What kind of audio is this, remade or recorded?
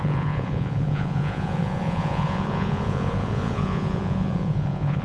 remade